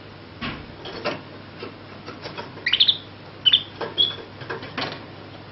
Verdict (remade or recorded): recorded